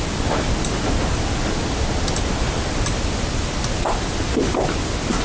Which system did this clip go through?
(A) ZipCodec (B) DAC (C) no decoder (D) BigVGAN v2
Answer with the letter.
C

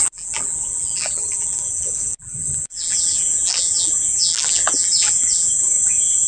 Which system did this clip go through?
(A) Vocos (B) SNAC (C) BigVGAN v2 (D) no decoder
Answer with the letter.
C